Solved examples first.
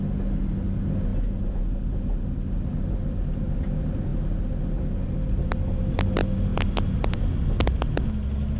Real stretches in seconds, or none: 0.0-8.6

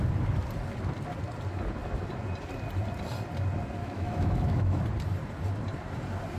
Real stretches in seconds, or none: 0.0-3.8; 4.8-6.4

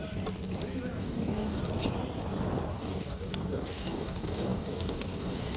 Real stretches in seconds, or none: 0.0-1.0; 1.6-2.7

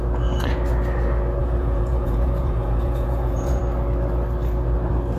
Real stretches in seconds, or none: 0.0-1.4; 3.6-5.2

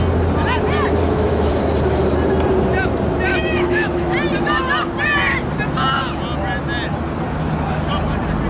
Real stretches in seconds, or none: 0.0-1.0; 1.5-3.3; 4.1-8.5

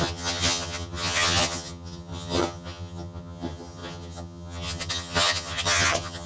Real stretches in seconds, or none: none

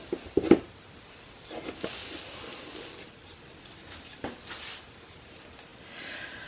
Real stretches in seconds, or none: 0.0-2.0; 4.6-5.7

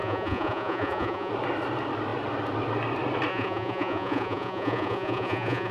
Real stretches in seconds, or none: 1.3-3.3